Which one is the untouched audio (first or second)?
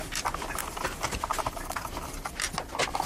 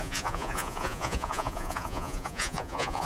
first